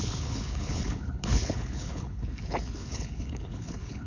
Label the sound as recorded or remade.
remade